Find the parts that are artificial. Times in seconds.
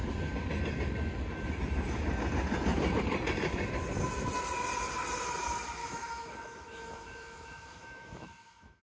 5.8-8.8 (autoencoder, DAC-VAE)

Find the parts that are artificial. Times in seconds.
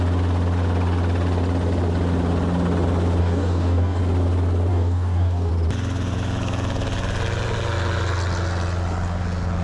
3.2-4.0 (codec, DAC); 4.7-5.5